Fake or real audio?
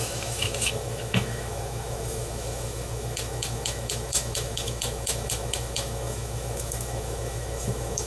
fake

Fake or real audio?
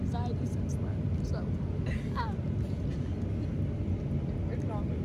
real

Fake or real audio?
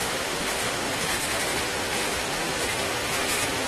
fake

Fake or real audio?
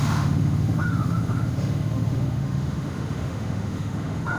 fake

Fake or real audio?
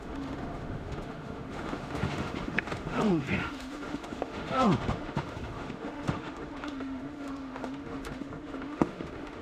fake